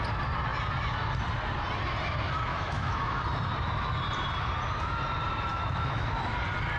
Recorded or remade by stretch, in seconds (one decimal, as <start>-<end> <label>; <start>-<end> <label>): 0.0-2.5 recorded; 2.5-3.2 remade; 3.2-5.5 recorded; 5.5-6.2 remade; 6.2-6.8 recorded